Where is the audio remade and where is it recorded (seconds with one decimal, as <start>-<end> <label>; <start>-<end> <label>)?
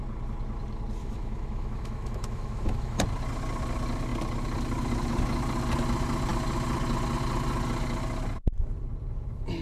0.0-1.0 recorded; 1.0-3.0 remade; 3.0-9.6 recorded